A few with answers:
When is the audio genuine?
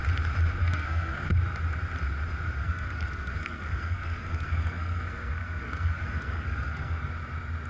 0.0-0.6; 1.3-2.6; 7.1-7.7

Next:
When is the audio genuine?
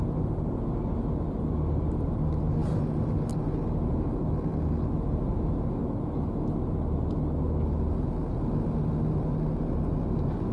0.0-10.5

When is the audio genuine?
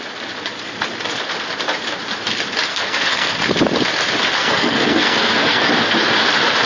0.0-2.7; 3.3-4.4; 5.7-6.7